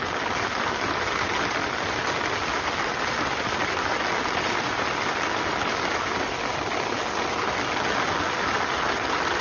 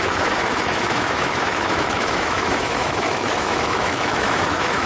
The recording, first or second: first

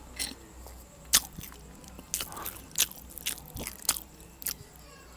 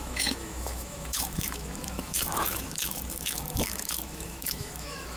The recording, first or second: first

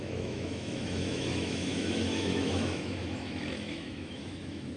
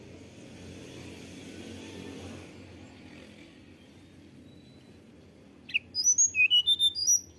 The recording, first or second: second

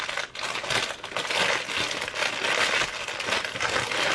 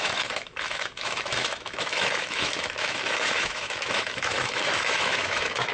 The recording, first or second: first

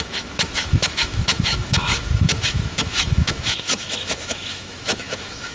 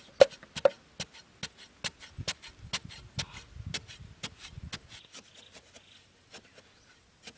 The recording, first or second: second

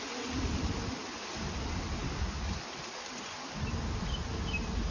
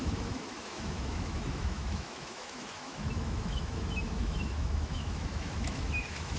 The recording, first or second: first